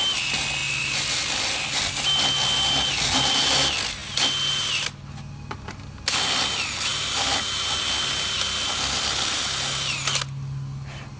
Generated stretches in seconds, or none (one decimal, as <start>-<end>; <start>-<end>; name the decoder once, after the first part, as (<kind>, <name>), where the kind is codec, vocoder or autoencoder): none